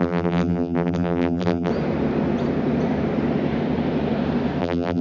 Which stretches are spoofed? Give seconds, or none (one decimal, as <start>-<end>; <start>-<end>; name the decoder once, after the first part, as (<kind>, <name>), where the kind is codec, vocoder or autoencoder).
0.0-1.7 (vocoder, BigVGAN v2); 4.6-5.0